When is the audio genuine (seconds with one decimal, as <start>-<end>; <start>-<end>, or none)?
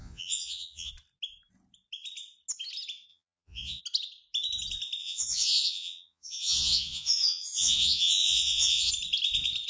0.9-3.1; 3.8-5.0; 8.9-9.7